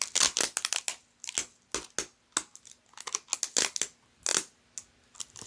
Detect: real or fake real